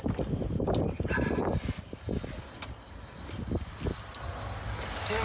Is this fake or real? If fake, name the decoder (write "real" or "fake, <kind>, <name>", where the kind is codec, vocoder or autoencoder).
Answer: real